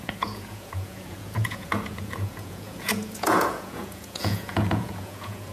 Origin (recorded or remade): remade